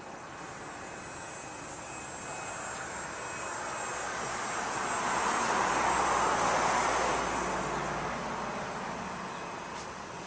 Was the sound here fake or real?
real